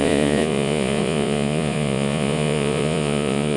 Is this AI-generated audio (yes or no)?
yes